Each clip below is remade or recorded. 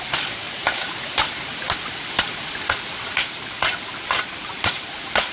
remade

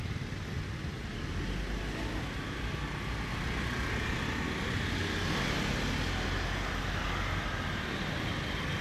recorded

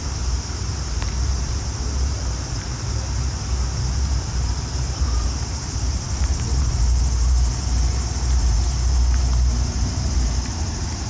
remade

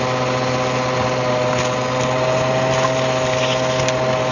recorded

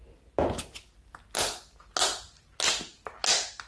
recorded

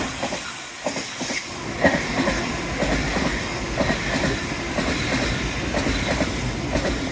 remade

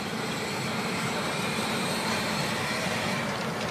remade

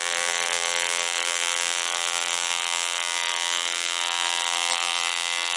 remade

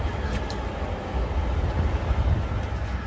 recorded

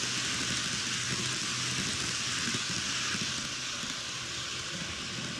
recorded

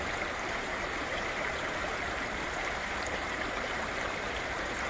remade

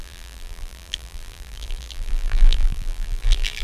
remade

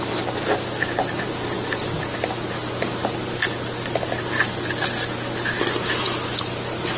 recorded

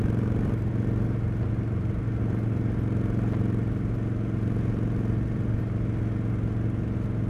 recorded